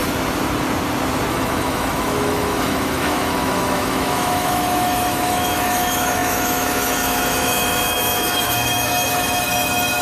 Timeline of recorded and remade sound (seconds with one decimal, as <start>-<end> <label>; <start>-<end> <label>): 0.0-1.3 recorded; 1.3-10.0 remade